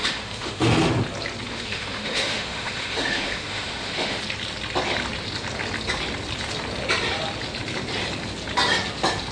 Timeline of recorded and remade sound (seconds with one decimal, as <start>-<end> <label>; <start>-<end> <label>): 0.0-0.9 remade; 0.9-1.5 recorded; 1.5-4.2 remade; 4.2-9.3 recorded